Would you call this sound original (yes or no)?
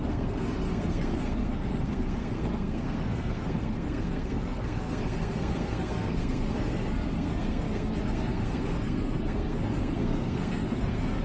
no